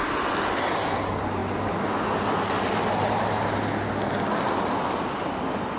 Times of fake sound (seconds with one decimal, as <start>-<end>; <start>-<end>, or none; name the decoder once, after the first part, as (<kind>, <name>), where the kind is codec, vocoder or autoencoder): none